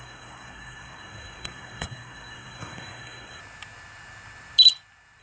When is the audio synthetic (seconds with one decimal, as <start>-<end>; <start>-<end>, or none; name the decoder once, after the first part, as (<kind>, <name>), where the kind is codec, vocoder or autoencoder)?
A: 0.0-3.4 (codec, SNAC)